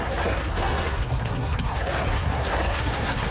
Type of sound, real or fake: fake